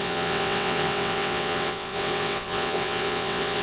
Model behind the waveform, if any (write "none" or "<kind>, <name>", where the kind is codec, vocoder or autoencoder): vocoder, WaveNeXt